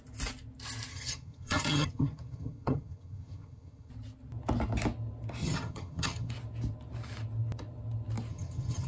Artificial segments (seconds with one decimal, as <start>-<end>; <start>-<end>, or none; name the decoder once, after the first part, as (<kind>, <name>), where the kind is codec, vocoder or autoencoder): 0.9-3.9 (vocoder, HiFi-GAN); 5.4-6.3; 8.3-8.9